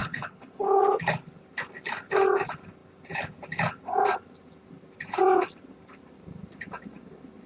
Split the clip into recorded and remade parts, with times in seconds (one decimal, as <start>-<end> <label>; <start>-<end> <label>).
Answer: 0.0-0.8 remade; 0.8-7.5 recorded